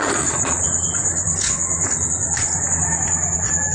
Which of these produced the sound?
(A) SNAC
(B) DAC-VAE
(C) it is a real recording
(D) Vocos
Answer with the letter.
D